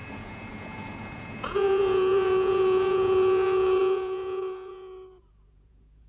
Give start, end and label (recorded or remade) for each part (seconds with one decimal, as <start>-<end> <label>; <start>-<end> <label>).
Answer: 0.0-6.1 remade